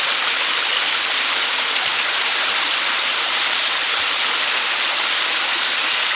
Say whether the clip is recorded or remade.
recorded